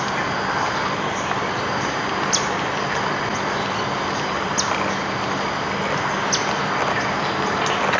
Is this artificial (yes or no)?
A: no